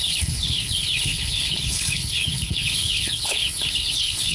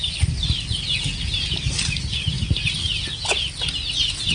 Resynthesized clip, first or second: first